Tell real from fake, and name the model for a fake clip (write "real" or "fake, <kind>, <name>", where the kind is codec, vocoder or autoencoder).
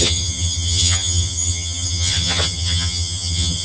fake, vocoder, HiFi-GAN